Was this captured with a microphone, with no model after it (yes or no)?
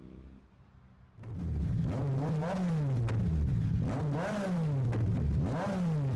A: yes